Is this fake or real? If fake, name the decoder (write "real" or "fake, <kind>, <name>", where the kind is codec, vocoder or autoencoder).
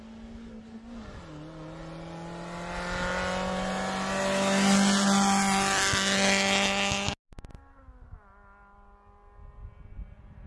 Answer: real